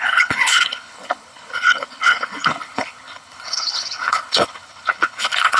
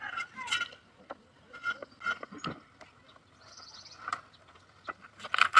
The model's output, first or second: first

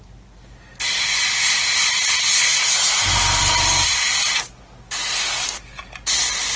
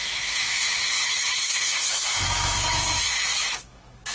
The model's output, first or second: second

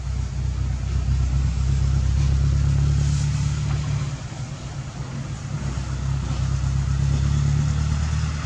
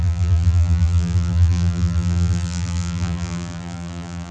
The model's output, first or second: second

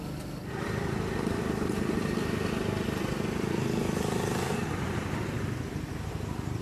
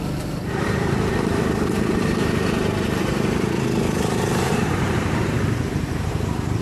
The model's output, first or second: second